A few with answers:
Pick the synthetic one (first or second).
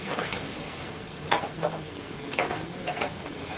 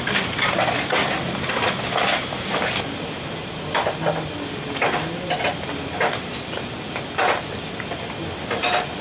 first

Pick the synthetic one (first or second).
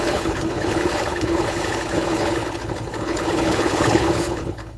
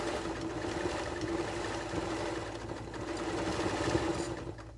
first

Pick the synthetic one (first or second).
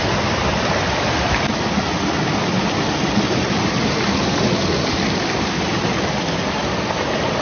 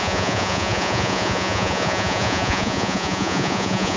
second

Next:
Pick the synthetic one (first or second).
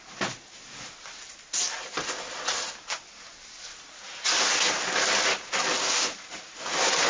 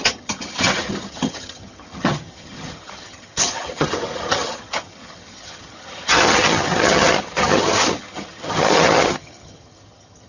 second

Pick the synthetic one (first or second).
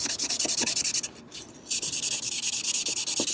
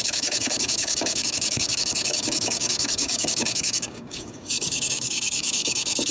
second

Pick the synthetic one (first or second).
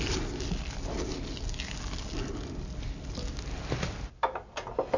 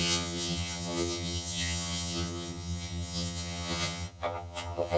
second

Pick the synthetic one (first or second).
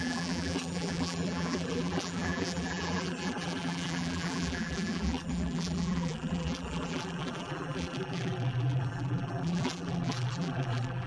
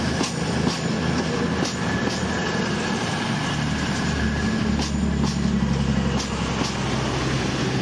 first